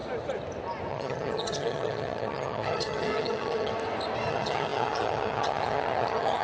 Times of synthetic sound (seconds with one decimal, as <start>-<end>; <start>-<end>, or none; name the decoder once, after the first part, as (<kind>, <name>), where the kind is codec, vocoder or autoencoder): 0.9-3.7 (vocoder, HiFi-GAN); 4.3-6.4